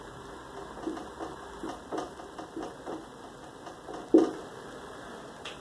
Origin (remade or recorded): recorded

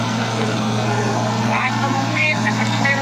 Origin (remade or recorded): remade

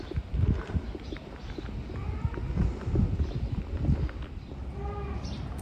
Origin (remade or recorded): recorded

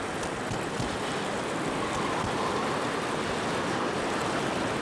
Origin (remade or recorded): recorded